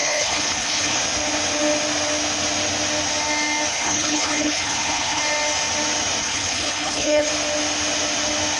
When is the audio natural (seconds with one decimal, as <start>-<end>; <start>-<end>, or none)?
1.0-3.7; 5.2-6.2; 7.3-8.6